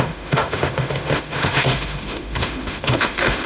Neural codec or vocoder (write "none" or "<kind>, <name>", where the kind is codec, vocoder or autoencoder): autoencoder, DAC-VAE